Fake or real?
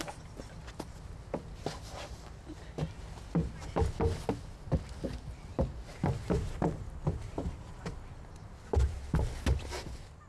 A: real